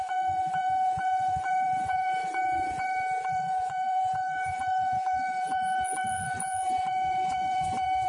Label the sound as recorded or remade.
remade